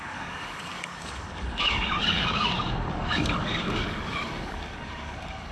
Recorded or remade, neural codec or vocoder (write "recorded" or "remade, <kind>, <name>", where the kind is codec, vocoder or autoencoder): remade, codec, DAC